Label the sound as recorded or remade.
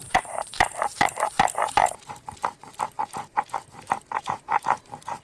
remade